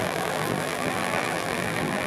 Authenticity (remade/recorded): remade